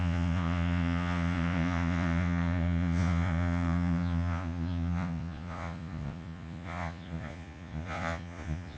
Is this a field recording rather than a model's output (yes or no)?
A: no